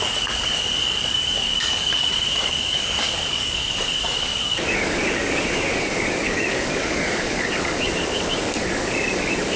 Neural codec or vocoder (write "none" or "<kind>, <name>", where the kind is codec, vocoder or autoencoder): codec, DAC